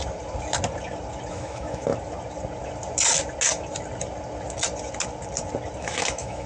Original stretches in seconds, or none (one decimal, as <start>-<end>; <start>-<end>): 0.0-1.3; 1.9-5.8